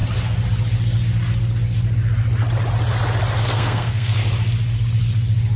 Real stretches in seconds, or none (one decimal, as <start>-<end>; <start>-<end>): 0.0-3.4; 4.2-5.6